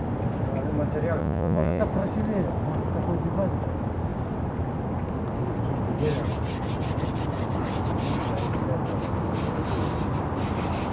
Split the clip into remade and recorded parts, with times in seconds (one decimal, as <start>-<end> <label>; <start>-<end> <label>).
0.0-1.2 recorded; 1.2-1.8 remade; 1.8-10.9 recorded